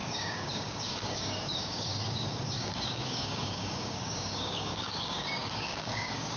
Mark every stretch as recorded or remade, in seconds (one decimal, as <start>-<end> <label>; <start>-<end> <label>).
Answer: 0.0-6.4 remade

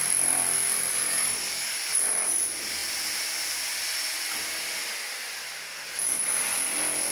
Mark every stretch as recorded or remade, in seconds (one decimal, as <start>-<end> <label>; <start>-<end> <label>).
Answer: 0.0-0.9 recorded; 0.9-1.9 remade; 1.9-7.1 recorded

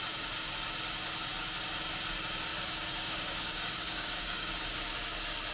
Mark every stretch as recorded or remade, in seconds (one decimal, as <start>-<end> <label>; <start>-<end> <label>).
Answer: 0.0-2.5 recorded; 2.5-4.5 remade; 4.5-5.5 recorded

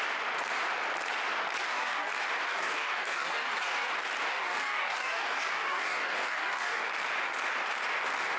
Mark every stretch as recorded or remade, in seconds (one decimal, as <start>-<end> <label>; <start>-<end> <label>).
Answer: 0.0-1.6 recorded; 1.6-2.1 remade; 2.1-2.5 recorded; 2.5-3.9 remade; 3.9-4.3 recorded; 4.3-6.8 remade; 6.8-8.4 recorded

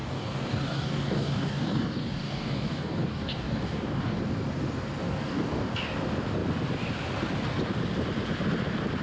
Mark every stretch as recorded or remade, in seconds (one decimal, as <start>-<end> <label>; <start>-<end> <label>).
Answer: 0.0-4.2 remade; 4.2-5.0 recorded; 5.0-5.7 remade; 5.7-9.0 recorded

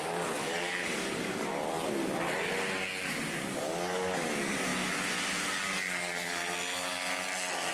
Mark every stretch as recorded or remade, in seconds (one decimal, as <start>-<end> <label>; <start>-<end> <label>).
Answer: 0.0-1.5 remade; 1.5-3.5 recorded; 3.5-4.7 remade; 4.7-5.6 recorded; 5.6-6.4 remade; 6.4-7.7 recorded

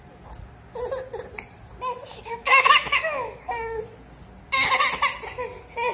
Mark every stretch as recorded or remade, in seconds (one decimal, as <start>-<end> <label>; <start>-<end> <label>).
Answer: 0.0-2.1 recorded; 2.1-3.8 remade; 3.8-5.9 recorded

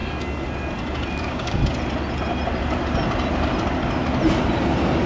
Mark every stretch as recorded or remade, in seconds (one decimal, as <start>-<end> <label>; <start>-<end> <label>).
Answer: 0.0-1.2 recorded; 1.2-1.6 remade; 1.6-5.1 recorded